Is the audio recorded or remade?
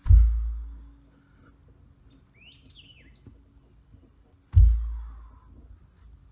recorded